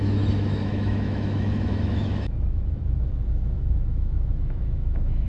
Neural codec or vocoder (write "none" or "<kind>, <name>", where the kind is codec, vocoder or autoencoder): autoencoder, DAC-VAE